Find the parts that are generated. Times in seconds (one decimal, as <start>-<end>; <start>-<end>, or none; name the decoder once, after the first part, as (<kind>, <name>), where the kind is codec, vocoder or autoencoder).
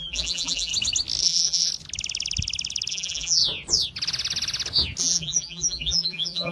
0.0-0.7 (vocoder, BigVGAN v2); 1.2-1.7; 2.9-3.4; 5.0-6.5